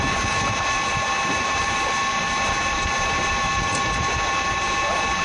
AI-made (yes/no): yes